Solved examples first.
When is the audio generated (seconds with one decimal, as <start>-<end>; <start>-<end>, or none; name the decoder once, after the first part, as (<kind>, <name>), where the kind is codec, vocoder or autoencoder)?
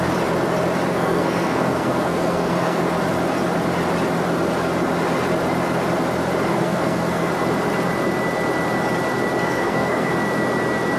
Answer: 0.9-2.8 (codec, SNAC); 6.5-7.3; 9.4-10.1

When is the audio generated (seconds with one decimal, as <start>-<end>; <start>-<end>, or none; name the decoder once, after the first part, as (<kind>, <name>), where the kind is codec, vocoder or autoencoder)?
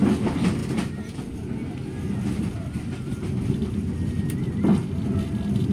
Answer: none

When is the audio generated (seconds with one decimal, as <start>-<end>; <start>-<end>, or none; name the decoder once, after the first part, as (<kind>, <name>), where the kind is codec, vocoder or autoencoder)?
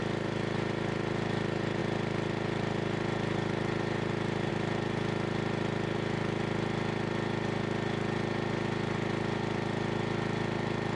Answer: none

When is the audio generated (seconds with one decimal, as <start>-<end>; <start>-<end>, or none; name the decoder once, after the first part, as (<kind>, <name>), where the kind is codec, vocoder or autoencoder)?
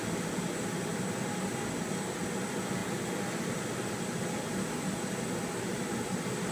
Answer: none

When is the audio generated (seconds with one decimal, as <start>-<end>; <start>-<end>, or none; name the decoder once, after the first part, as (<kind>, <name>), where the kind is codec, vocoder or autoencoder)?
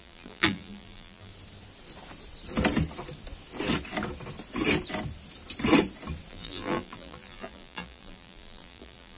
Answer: 0.0-1.3 (vocoder, BigVGAN v2); 6.3-9.2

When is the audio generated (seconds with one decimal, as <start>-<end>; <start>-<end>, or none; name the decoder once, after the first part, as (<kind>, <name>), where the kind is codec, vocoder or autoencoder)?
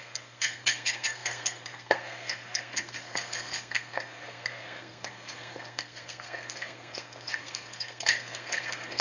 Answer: 0.0-9.0 (codec, SNAC)